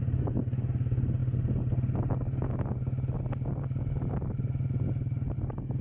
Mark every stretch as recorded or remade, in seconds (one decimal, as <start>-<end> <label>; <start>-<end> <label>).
0.0-5.8 recorded